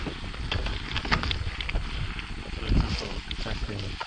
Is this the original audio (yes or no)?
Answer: yes